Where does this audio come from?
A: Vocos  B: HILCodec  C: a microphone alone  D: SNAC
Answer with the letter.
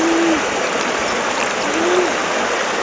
C